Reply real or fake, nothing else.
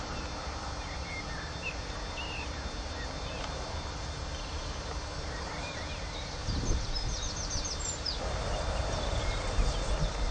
fake